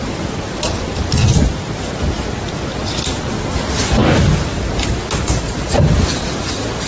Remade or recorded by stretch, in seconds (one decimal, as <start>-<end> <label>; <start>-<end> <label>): 0.0-1.2 recorded; 1.2-2.1 remade; 2.1-4.0 recorded; 4.0-5.0 remade; 5.0-6.9 recorded